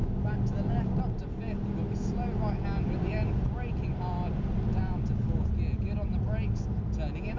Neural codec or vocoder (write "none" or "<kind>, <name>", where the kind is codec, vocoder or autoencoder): none